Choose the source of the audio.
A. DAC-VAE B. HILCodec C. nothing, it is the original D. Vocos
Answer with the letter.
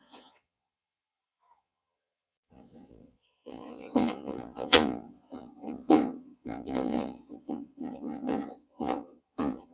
D